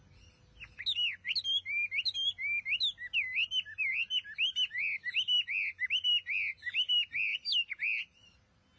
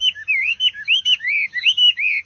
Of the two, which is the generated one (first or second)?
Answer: second